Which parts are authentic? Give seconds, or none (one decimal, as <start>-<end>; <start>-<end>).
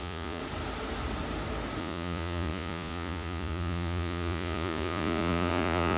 0.4-1.8